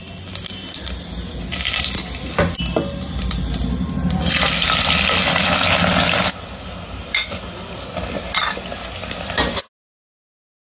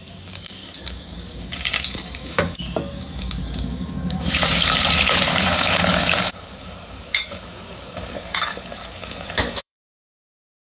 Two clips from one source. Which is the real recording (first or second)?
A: first